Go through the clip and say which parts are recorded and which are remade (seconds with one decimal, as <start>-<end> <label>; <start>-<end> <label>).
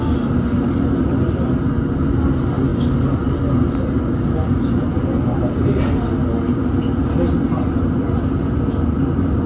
0.0-9.5 recorded